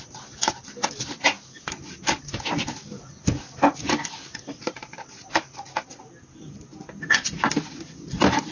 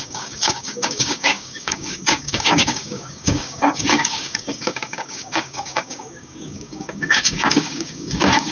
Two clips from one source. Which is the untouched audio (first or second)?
first